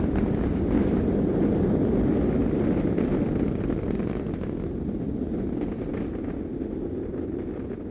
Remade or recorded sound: recorded